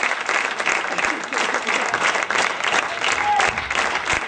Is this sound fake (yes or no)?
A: no